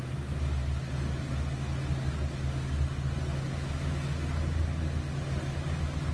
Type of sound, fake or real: real